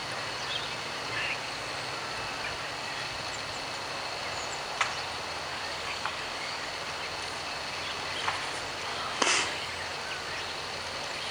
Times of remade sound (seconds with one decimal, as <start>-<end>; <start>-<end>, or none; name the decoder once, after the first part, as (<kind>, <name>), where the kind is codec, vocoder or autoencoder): 5.5-6.7 (codec, DAC); 8.9-9.7